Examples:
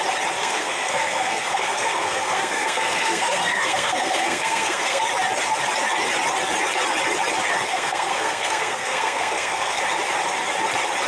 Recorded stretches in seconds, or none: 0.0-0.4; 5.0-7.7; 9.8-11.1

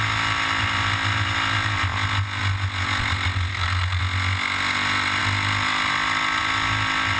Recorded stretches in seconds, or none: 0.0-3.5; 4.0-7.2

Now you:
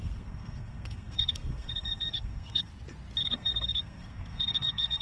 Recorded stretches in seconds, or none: 2.7-3.2